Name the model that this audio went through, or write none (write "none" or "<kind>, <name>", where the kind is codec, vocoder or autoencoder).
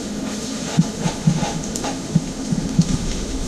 autoencoder, DAC-VAE